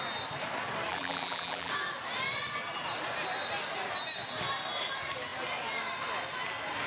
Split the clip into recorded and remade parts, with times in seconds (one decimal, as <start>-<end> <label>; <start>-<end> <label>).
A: 0.0-0.9 recorded; 0.9-1.7 remade; 1.7-6.9 recorded